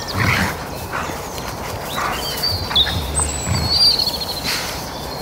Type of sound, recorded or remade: recorded